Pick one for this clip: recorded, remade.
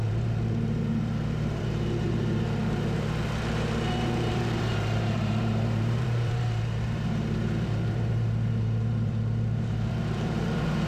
remade